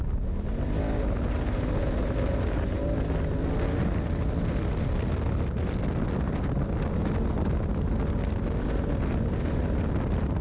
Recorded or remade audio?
recorded